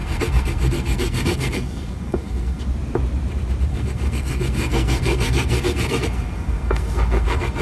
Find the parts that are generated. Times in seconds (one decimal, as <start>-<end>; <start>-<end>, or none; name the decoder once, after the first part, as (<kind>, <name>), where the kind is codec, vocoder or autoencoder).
0.0-2.6 (codec, SNAC); 3.7-7.6